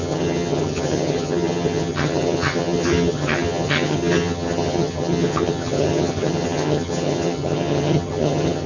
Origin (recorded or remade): remade